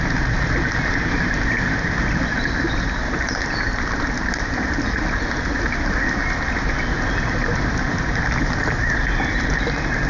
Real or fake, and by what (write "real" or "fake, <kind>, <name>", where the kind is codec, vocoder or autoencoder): real